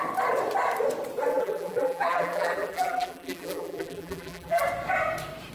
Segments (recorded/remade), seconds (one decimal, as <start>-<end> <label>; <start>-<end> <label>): 0.0-1.3 recorded; 1.3-4.6 remade; 4.6-5.5 recorded

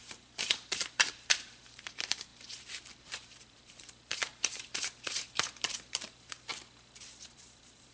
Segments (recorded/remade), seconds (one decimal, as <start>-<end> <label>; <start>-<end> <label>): 0.0-6.5 remade; 6.5-7.2 recorded; 7.2-7.9 remade

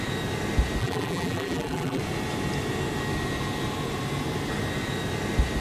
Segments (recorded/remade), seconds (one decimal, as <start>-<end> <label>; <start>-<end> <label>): 0.0-0.8 recorded; 0.8-2.0 remade; 2.0-5.6 recorded

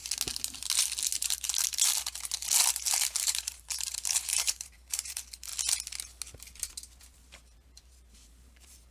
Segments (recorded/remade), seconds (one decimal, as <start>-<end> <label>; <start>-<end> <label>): 0.0-2.7 recorded; 2.7-5.5 remade; 5.5-7.0 recorded; 7.0-8.9 remade

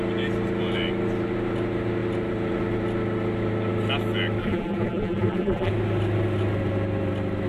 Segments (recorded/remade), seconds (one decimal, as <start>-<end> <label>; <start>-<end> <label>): 0.0-4.4 recorded; 4.4-5.7 remade; 5.7-7.5 recorded

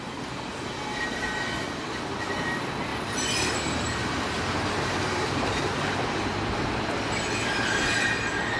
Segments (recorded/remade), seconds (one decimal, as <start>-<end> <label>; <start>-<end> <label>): 0.0-4.0 recorded; 4.0-5.6 remade; 5.6-6.3 recorded; 6.3-6.9 remade; 6.9-8.6 recorded

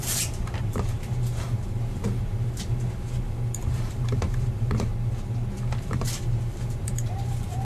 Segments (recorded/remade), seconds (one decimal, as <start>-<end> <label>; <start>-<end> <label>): 0.0-4.9 remade; 4.9-5.5 recorded; 5.5-7.6 remade

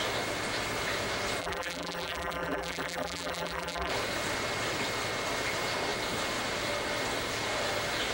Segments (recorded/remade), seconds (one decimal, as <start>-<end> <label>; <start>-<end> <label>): 0.0-1.4 recorded; 1.4-3.9 remade; 3.9-8.1 recorded